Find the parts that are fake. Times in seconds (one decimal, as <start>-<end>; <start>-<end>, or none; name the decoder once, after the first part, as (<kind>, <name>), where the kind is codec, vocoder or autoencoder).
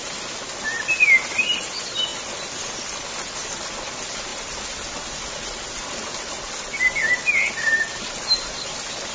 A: none